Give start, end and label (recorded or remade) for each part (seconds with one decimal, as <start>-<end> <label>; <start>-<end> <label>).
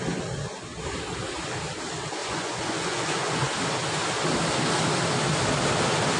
0.0-2.2 recorded; 2.2-3.5 remade; 3.5-6.2 recorded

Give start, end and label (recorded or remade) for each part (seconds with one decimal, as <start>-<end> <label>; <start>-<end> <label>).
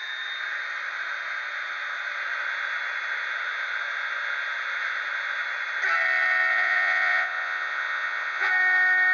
0.0-6.5 recorded; 6.5-8.5 remade; 8.5-9.1 recorded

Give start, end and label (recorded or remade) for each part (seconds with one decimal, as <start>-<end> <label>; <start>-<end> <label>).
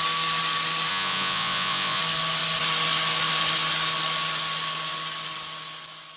0.0-0.9 recorded; 0.9-2.0 remade; 2.0-6.2 recorded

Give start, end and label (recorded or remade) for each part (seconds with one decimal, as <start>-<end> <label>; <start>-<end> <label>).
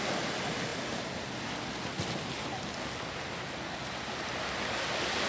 0.0-5.3 recorded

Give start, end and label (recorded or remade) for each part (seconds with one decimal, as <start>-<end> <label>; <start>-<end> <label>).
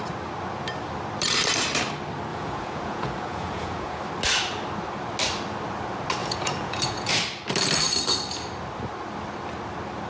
0.0-2.3 recorded; 2.3-4.0 remade; 4.0-6.2 recorded; 6.2-7.1 remade; 7.1-10.1 recorded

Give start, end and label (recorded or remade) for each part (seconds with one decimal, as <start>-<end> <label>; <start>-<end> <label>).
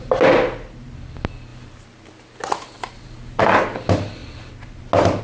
0.0-5.2 recorded